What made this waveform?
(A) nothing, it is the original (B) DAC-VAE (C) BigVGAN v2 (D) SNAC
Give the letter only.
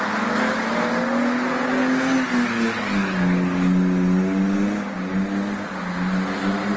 A